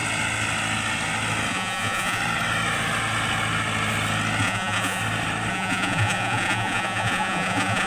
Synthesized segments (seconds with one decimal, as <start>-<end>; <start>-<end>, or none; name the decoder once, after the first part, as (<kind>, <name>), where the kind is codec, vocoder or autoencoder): 1.5-2.2 (vocoder, Vocos); 4.4-5.0; 5.5-7.9